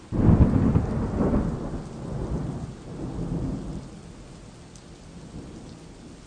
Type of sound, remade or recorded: recorded